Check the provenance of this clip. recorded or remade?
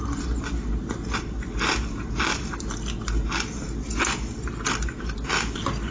recorded